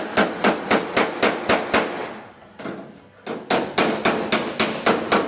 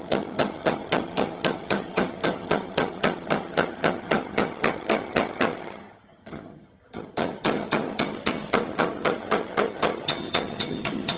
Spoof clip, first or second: second